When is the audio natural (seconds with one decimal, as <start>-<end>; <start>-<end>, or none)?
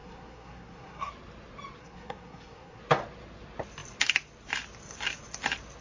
1.1-1.8; 2.8-5.8